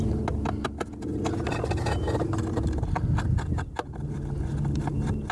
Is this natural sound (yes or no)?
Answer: yes